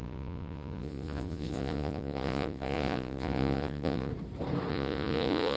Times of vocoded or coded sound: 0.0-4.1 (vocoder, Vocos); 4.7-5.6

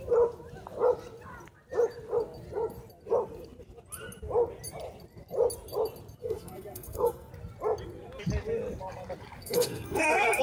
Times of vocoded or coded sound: 6.2-7.3 (codec, SNAC); 9.4-10.4